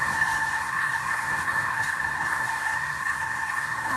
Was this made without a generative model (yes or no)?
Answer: no